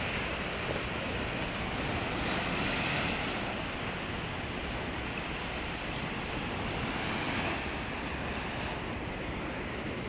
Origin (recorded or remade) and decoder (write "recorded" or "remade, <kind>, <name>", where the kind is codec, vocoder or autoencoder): recorded